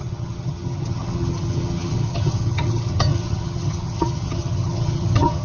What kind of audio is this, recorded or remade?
remade